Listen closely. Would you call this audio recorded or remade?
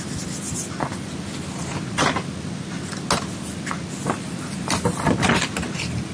recorded